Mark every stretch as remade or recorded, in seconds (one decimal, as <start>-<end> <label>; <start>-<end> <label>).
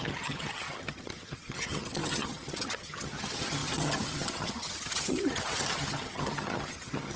0.0-7.2 remade